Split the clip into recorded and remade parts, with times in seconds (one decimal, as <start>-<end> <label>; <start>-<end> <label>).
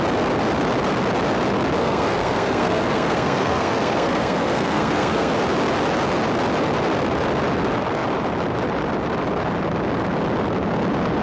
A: 0.0-1.8 recorded; 1.8-5.3 remade; 5.3-11.2 recorded